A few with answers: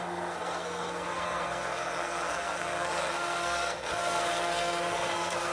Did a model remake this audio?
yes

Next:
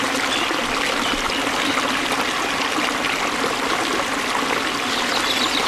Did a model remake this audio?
no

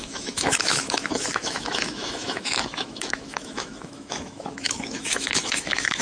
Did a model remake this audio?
yes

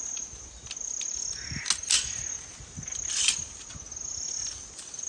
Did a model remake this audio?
no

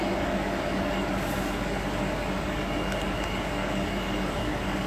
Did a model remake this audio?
yes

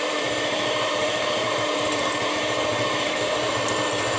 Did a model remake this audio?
yes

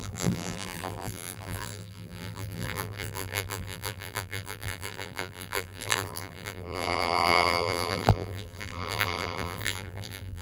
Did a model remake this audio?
yes